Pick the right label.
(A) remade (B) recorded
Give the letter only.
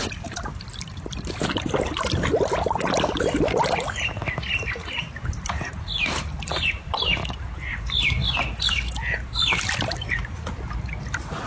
A